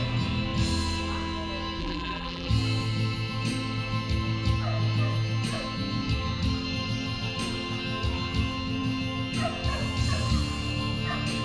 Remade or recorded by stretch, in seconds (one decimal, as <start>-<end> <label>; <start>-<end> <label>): 0.0-1.8 recorded; 1.8-2.5 remade; 2.5-11.4 recorded